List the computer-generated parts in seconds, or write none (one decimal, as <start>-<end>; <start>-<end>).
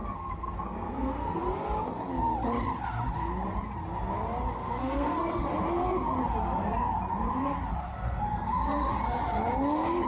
0.0-1.4; 4.6-5.4; 7.9-8.9